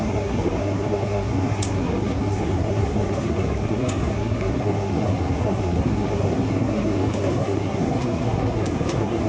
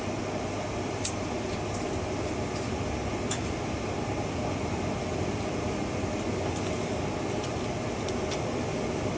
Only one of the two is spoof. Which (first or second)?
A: first